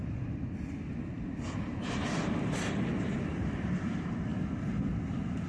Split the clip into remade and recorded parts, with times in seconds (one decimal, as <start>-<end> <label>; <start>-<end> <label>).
0.0-3.3 recorded; 3.3-4.3 remade; 4.3-5.5 recorded